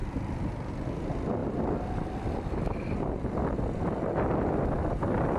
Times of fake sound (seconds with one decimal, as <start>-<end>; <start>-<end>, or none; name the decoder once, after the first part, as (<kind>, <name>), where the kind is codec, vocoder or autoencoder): none